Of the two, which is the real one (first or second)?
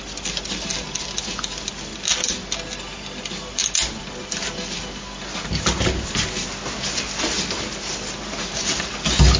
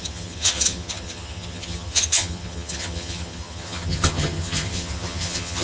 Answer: first